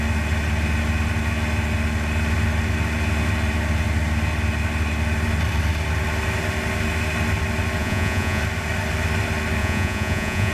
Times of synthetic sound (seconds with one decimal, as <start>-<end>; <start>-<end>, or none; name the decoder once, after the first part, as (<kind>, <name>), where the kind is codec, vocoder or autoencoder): 7.8-8.4 (vocoder, Vocos); 9.6-10.5